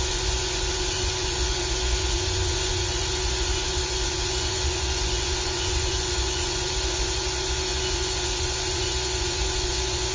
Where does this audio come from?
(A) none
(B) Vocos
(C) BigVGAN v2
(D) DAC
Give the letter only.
B